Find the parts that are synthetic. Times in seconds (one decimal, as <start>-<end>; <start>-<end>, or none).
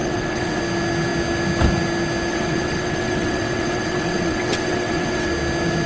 0.0-0.6; 2.3-5.3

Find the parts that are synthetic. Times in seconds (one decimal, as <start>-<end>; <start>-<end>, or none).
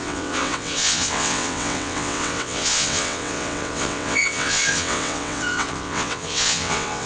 0.0-7.1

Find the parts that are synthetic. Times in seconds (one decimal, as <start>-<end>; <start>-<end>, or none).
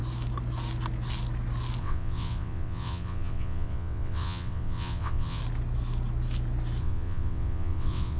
1.8-5.4; 6.8-8.2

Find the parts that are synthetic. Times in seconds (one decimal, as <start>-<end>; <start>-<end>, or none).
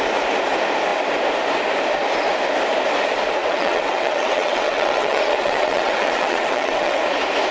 3.4-7.0